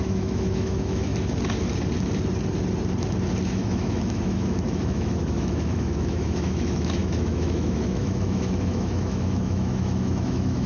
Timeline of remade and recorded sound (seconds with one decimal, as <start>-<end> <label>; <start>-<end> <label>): 0.0-1.1 remade; 1.1-3.5 recorded; 3.5-10.7 remade